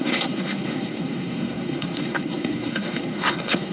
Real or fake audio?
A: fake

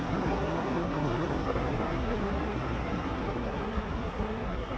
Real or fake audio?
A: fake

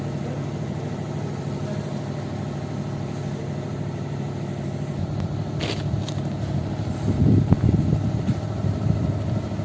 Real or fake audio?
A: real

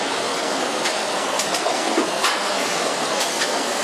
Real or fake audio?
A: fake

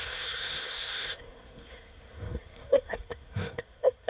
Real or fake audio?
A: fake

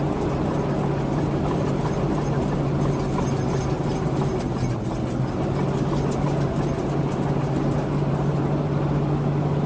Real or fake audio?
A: real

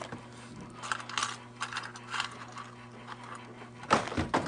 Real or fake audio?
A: real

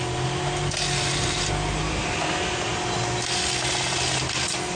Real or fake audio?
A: real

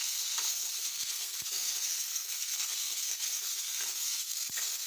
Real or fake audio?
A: fake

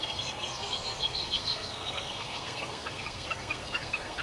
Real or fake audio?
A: fake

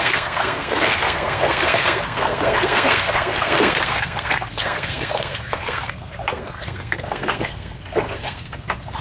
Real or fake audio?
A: fake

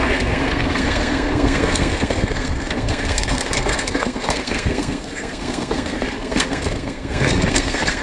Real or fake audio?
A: fake